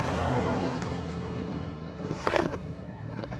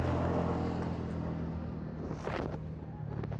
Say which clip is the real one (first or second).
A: second